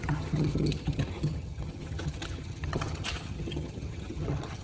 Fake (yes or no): yes